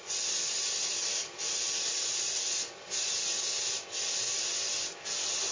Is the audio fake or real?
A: real